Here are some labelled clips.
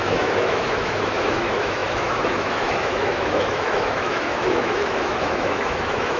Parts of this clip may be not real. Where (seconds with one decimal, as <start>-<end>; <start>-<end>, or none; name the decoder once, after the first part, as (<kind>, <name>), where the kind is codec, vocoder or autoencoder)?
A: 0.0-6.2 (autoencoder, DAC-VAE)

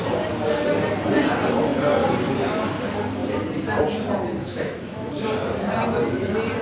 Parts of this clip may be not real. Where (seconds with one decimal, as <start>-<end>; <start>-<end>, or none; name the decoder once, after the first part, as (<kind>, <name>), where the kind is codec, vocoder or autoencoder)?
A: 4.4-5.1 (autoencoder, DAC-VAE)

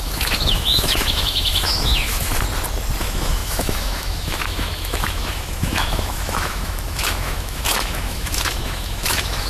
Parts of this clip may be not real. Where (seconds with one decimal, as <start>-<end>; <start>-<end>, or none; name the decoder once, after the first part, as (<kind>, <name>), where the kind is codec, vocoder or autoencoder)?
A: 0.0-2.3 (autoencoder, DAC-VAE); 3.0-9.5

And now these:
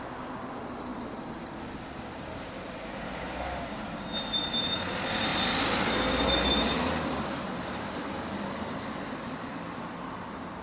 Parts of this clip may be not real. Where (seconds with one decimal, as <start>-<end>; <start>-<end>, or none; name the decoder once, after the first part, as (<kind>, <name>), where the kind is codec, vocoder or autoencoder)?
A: none